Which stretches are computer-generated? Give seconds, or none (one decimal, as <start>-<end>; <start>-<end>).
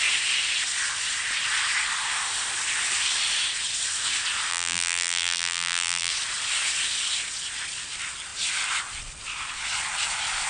4.5-6.1